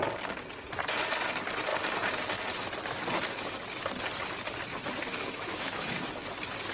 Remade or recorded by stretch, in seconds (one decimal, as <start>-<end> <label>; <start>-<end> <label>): 0.0-5.1 recorded; 5.1-6.2 remade; 6.2-6.7 recorded